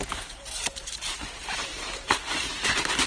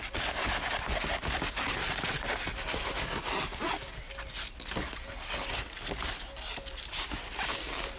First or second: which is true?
second